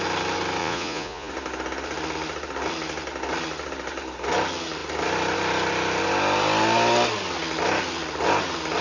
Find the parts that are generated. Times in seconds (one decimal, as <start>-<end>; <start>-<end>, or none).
0.6-1.3